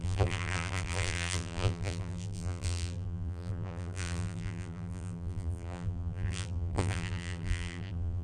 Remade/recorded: remade